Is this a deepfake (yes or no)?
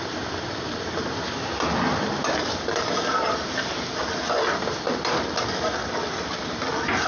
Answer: no